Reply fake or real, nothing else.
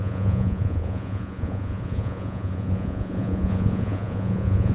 fake